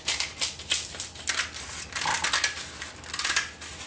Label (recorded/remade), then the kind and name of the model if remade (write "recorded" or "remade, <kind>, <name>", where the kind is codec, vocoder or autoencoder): recorded